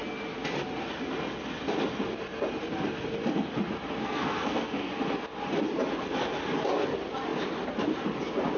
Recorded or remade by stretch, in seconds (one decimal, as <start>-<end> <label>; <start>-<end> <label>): 0.0-4.0 recorded; 4.0-4.9 remade; 4.9-8.6 recorded